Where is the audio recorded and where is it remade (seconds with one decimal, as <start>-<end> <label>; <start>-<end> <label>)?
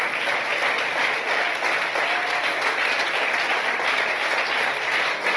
0.0-5.4 recorded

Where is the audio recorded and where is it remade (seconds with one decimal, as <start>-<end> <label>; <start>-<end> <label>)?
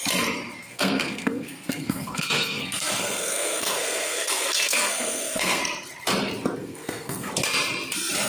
0.0-0.6 recorded; 0.6-5.6 remade; 5.6-6.6 recorded; 6.6-7.3 remade; 7.3-8.3 recorded